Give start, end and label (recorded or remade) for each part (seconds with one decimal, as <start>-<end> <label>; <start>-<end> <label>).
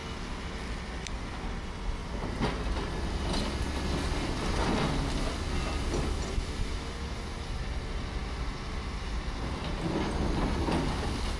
0.0-2.0 recorded; 2.0-3.3 remade; 3.3-11.4 recorded